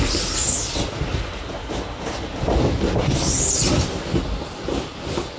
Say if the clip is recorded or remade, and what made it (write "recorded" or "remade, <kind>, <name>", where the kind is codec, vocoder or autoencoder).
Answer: recorded